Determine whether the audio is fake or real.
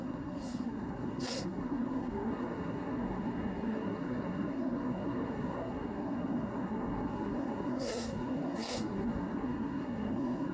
fake